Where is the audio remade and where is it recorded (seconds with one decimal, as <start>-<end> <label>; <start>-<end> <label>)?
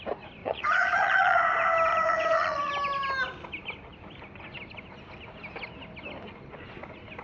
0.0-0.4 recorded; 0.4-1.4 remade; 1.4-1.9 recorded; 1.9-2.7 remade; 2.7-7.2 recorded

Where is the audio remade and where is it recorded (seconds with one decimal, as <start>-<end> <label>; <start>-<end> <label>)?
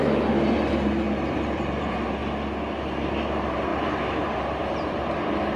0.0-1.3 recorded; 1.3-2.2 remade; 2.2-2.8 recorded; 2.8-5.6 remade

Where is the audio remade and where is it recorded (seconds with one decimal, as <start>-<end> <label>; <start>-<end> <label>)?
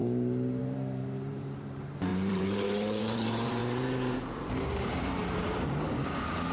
0.0-0.6 recorded; 0.6-6.5 remade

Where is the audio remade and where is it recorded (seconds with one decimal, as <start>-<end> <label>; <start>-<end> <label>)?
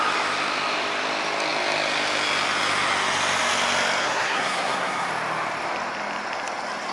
0.0-4.0 recorded; 4.0-5.1 remade; 5.1-6.9 recorded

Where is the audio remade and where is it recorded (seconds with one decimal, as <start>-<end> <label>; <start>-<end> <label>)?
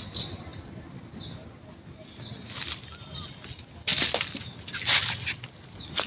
0.0-6.1 recorded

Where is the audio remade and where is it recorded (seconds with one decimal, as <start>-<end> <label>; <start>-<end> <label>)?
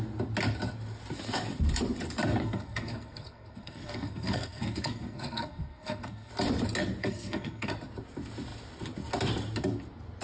0.0-2.4 recorded; 2.4-6.3 remade; 6.3-7.0 recorded; 7.0-7.7 remade; 7.7-10.2 recorded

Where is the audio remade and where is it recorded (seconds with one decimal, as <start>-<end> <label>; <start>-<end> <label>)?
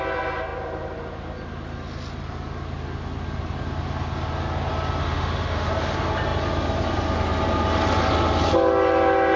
0.0-5.0 recorded; 5.0-5.7 remade; 5.7-9.4 recorded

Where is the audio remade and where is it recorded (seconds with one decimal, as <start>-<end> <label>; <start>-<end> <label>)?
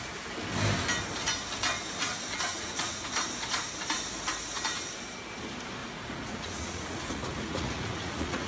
0.0-2.5 recorded; 2.5-3.1 remade; 3.1-5.8 recorded; 5.8-8.5 remade